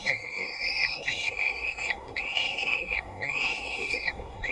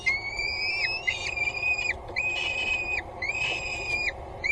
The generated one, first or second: first